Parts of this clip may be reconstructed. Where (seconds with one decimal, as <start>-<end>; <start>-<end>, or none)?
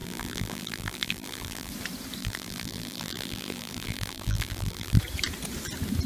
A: 0.0-1.7; 2.2-5.0